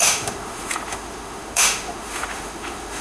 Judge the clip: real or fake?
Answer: fake